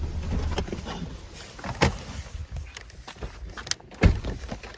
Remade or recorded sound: recorded